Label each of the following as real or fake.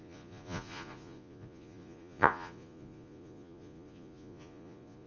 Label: fake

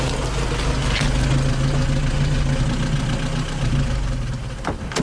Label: real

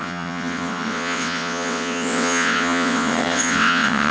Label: fake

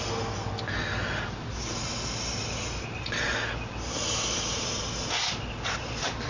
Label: real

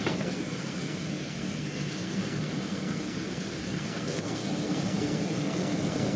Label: fake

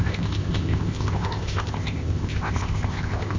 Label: fake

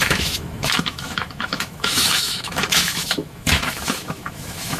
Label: fake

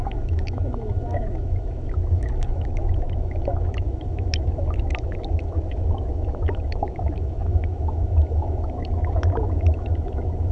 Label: fake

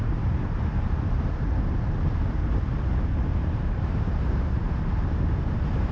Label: fake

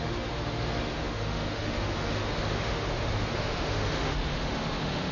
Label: fake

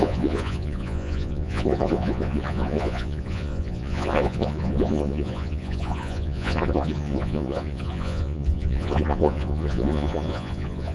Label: fake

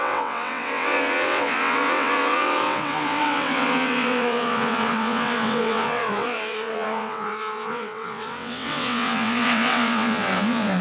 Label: fake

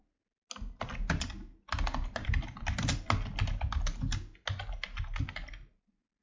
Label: real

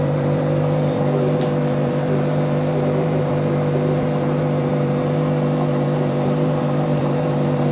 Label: fake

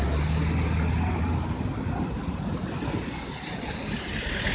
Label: real